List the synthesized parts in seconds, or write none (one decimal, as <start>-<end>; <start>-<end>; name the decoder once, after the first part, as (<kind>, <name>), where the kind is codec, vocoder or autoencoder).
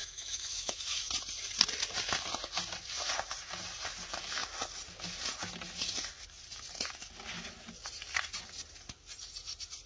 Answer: 0.0-1.1 (autoencoder, DAC-VAE)